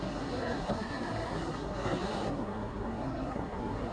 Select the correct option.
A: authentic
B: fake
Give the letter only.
B